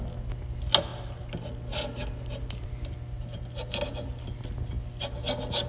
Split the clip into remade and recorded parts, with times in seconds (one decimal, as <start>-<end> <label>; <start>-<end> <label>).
0.0-5.7 recorded